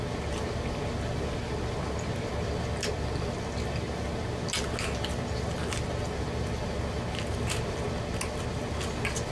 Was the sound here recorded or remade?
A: recorded